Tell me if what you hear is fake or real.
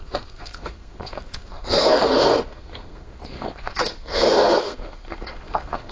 fake